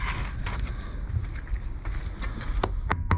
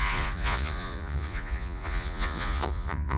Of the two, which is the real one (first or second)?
first